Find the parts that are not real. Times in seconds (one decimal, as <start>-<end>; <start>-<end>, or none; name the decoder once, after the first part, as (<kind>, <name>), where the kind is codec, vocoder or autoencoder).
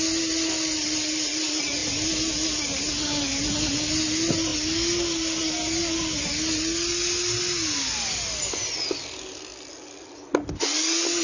none